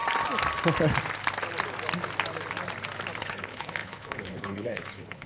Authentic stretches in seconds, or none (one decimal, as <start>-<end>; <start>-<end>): 0.0-3.2